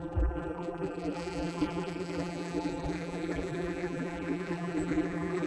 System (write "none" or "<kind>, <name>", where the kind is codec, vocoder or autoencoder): vocoder, BigVGAN v2